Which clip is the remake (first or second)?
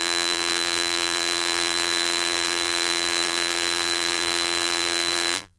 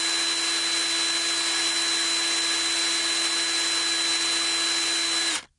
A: first